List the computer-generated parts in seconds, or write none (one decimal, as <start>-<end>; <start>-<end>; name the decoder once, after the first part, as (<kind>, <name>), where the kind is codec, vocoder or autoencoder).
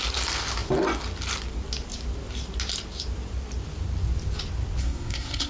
4.8-5.5 (codec, SNAC)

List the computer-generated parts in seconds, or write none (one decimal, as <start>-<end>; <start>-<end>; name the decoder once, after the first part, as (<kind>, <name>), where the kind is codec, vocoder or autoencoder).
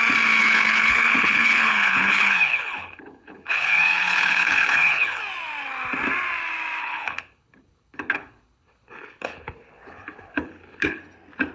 0.4-5.2 (codec, HILCodec); 6.8-11.0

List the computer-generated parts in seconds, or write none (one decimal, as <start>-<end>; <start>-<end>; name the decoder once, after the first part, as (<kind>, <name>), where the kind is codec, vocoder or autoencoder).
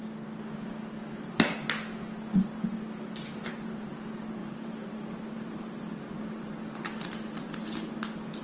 3.4-3.9 (vocoder, BigVGAN v2); 4.4-6.5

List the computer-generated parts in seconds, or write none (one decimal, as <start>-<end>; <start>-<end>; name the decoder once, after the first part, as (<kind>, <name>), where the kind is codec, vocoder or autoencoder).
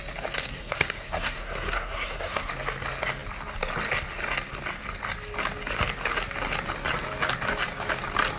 0.4-2.5 (codec, SNAC)